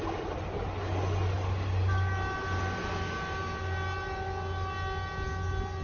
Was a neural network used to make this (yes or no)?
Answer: no